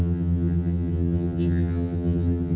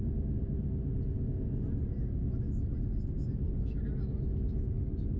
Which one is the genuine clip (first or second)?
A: second